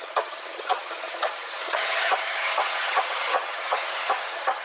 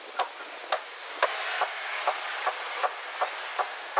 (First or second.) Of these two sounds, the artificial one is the first